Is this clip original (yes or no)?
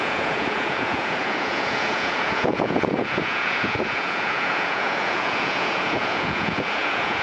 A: no